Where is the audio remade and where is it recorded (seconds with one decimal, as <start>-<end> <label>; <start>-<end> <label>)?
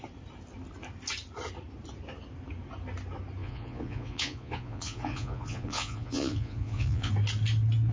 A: 0.0-3.4 recorded; 3.4-7.1 remade; 7.1-7.9 recorded